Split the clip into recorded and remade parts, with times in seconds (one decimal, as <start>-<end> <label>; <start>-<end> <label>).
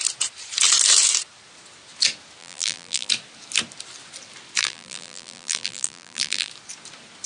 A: 0.0-2.4 recorded; 2.4-3.1 remade; 3.1-4.6 recorded; 4.6-6.5 remade; 6.5-7.3 recorded